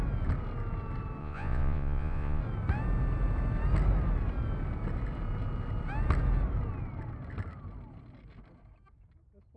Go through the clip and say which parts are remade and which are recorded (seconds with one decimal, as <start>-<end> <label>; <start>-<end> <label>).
0.0-1.2 recorded; 1.2-2.4 remade; 2.4-9.6 recorded